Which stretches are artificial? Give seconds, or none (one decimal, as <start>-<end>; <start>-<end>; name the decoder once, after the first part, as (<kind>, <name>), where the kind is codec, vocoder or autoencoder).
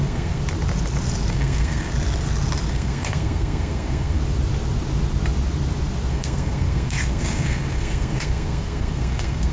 0.0-0.4 (codec, SNAC); 1.3-1.9; 2.7-4.2; 6.1-9.5